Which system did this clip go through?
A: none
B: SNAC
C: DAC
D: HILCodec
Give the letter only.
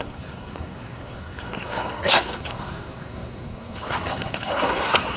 B